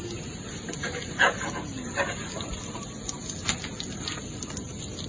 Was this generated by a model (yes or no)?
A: no